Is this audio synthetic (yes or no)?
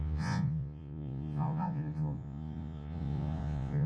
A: yes